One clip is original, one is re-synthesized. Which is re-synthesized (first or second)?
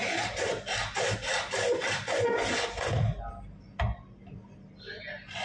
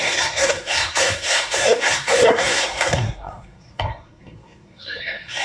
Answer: second